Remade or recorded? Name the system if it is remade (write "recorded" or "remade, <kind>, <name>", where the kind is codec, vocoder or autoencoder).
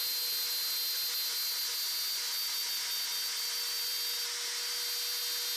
recorded